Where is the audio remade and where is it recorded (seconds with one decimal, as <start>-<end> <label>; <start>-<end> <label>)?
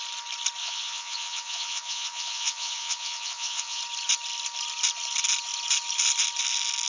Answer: 0.0-0.6 recorded; 0.6-3.8 remade; 3.8-6.9 recorded